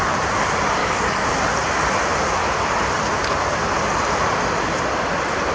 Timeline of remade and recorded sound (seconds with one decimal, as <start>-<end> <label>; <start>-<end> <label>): 0.0-0.8 recorded; 0.8-1.3 remade; 1.3-5.5 recorded